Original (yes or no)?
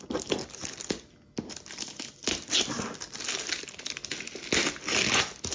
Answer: yes